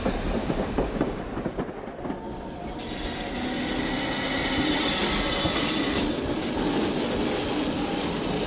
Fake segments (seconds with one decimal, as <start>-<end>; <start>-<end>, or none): 0.4-1.2